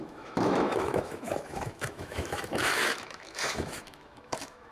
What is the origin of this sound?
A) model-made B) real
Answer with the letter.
A